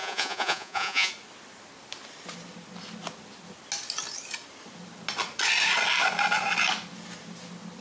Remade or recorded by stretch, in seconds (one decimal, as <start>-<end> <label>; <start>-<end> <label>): 0.0-1.1 remade; 1.1-7.8 recorded